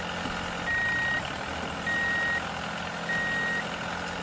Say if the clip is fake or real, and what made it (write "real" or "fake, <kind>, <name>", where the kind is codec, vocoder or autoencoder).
real